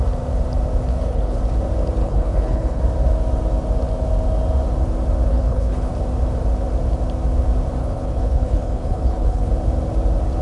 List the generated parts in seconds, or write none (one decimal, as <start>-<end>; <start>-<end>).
0.9-1.4; 2.0-2.8; 5.3-5.9; 7.8-9.5